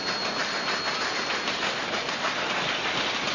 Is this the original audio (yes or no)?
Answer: yes